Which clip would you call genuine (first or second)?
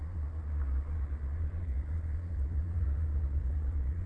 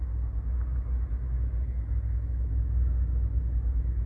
second